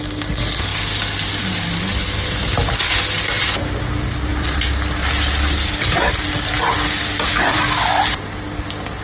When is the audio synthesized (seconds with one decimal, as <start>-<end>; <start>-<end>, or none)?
none